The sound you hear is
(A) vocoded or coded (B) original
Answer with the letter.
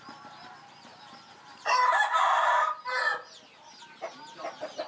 B